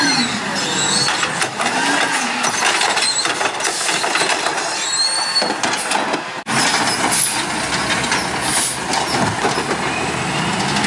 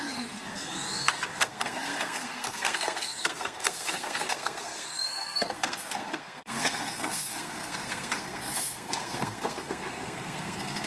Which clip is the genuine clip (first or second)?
first